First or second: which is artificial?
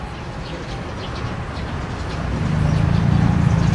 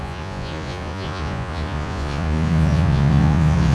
second